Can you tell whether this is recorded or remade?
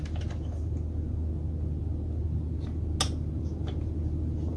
recorded